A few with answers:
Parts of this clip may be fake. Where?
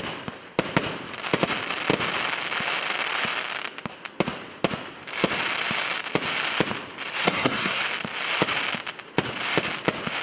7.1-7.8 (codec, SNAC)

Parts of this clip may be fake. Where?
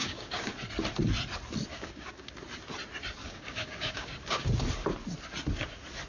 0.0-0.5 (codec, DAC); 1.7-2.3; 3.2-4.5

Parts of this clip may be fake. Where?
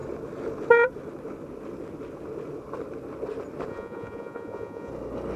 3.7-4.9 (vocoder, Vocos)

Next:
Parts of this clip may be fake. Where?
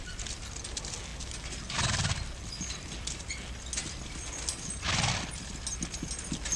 none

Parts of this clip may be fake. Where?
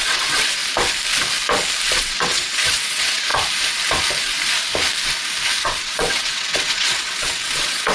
0.0-0.6 (vocoder, WaveNeXt); 2.0-3.3; 5.6-7.9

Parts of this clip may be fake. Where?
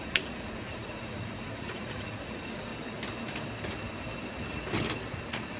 0.0-2.7 (vocoder, Vocos); 5.1-5.6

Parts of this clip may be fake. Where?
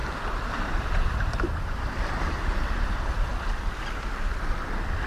0.0-3.1 (vocoder, BigVGAN v2)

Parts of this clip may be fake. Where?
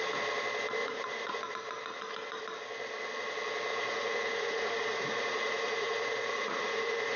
0.8-1.5 (vocoder, Vocos); 3.7-7.2